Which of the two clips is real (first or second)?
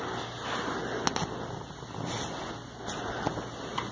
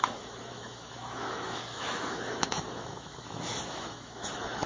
first